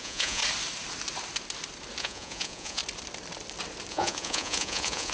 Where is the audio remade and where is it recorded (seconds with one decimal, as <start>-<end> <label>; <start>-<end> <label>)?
0.0-0.4 remade; 0.4-2.0 recorded; 2.0-2.8 remade; 2.8-3.9 recorded; 3.9-5.1 remade